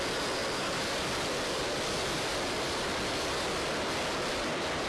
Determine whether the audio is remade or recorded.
recorded